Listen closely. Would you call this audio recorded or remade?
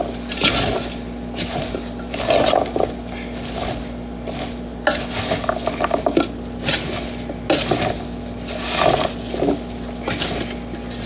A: recorded